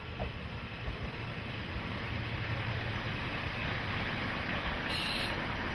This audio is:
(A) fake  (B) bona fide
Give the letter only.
B